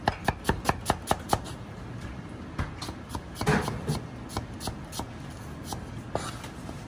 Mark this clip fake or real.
real